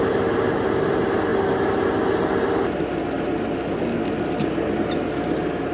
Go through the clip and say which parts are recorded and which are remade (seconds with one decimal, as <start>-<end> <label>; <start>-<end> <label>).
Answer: 0.0-5.7 recorded